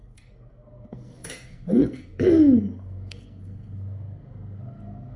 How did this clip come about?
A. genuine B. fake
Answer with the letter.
B